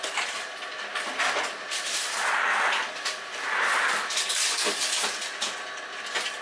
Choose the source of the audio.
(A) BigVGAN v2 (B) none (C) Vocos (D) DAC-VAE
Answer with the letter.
B